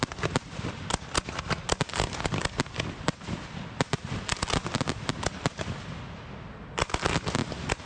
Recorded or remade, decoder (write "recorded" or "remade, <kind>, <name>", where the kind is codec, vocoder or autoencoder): recorded